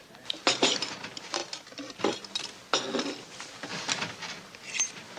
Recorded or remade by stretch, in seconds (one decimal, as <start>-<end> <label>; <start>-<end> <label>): 0.0-2.6 remade; 2.6-3.2 recorded; 3.2-3.7 remade; 3.7-4.8 recorded; 4.8-5.2 remade